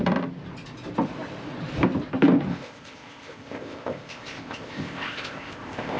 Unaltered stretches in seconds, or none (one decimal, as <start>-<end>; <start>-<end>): 0.0-2.5

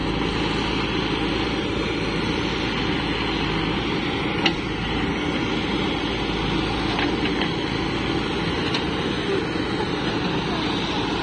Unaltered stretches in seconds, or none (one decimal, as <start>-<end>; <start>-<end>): 0.0-11.2

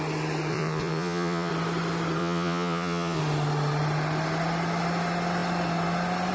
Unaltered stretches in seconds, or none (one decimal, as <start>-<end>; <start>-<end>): 0.0-0.5; 1.5-2.2; 3.2-6.3

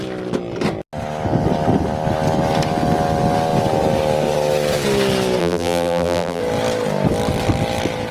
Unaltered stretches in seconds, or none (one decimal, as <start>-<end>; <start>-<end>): 0.0-5.4; 6.4-8.1

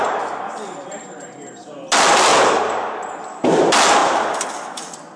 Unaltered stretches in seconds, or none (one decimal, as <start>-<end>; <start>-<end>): 0.0-4.0; 4.5-5.2